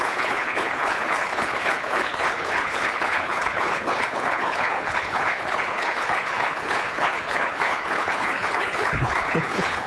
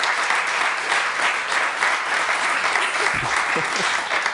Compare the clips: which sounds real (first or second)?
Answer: second